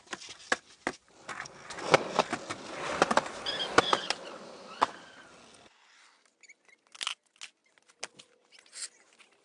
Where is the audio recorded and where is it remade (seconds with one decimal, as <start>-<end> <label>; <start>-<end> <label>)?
0.0-9.4 recorded

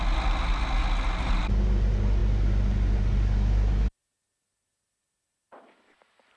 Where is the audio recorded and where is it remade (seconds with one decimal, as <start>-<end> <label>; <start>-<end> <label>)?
0.0-6.4 recorded

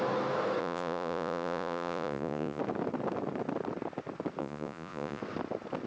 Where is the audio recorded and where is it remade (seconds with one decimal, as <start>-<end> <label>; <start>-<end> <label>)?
0.0-0.6 recorded; 0.6-2.6 remade; 2.6-4.4 recorded; 4.4-5.2 remade; 5.2-5.9 recorded

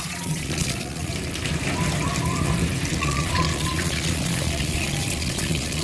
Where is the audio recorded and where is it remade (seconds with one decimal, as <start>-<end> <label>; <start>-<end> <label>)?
0.0-1.1 remade; 1.1-2.9 recorded; 2.9-5.8 remade

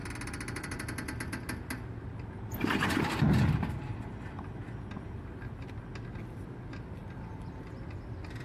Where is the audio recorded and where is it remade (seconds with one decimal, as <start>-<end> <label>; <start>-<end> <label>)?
0.0-8.4 recorded

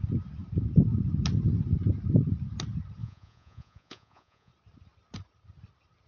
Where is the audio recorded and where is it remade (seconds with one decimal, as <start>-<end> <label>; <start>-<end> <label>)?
0.0-3.0 recorded; 3.0-4.5 remade; 4.5-6.1 recorded

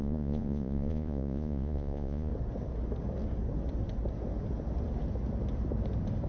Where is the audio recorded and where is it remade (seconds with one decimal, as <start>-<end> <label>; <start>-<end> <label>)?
0.0-2.3 remade; 2.3-6.3 recorded

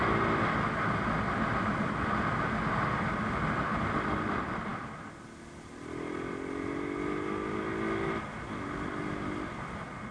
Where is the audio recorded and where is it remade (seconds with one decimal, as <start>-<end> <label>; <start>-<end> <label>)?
0.0-10.1 recorded